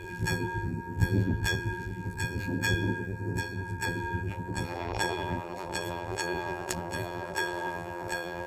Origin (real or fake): fake